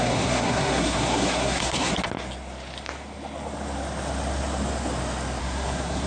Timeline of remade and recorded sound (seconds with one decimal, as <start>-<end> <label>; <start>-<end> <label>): 0.0-1.9 remade; 1.9-5.4 recorded; 5.4-6.1 remade